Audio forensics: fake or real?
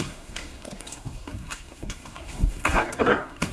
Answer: fake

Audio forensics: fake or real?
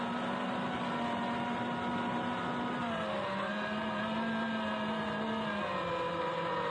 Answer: real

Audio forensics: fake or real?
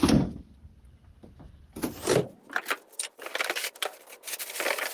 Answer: fake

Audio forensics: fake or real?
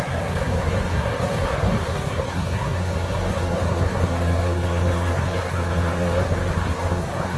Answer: fake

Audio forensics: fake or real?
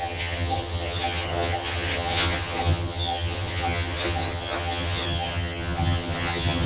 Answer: fake